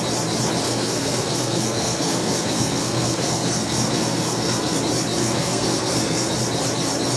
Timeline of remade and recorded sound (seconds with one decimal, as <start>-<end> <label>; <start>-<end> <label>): 0.0-0.6 recorded; 0.6-4.8 remade; 4.8-5.2 recorded; 5.2-6.3 remade; 6.3-7.2 recorded